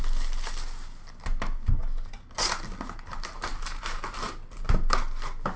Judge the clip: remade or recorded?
recorded